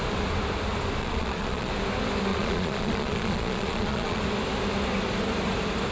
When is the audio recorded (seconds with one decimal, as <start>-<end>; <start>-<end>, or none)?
0.0-1.0; 1.7-2.3; 4.2-5.9